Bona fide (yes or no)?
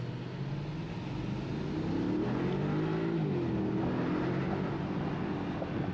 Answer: yes